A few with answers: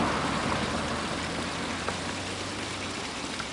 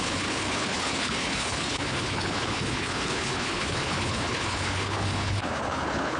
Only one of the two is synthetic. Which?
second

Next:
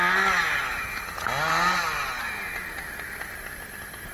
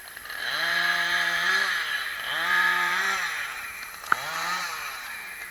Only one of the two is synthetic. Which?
second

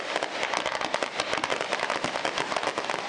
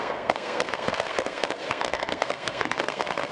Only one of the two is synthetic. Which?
second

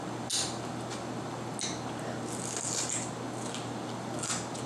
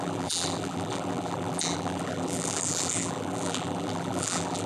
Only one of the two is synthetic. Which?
second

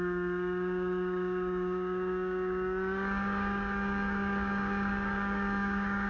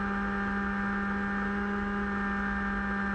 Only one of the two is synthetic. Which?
first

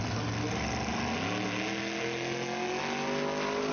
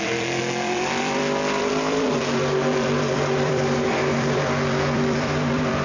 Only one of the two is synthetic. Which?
second